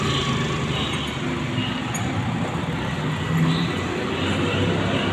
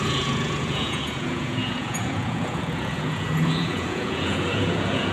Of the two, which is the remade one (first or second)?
second